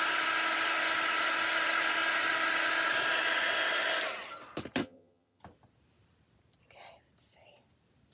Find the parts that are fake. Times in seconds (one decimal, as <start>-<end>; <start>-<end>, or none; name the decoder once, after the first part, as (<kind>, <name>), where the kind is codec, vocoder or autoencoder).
4.8-5.4 (vocoder, HiFi-GAN)